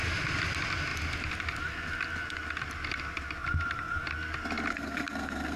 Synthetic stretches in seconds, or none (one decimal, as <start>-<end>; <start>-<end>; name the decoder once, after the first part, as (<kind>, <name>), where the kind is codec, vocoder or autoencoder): 4.7-5.6 (codec, SNAC)